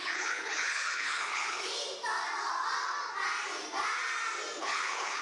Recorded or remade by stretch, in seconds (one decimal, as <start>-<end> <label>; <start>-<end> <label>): 0.0-1.7 remade; 1.7-4.6 recorded; 4.6-5.2 remade